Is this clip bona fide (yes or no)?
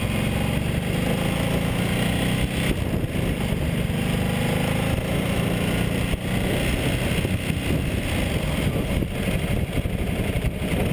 yes